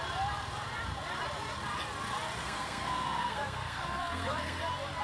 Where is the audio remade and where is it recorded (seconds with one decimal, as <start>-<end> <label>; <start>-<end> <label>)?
0.0-2.4 recorded; 2.4-4.6 remade; 4.6-5.0 recorded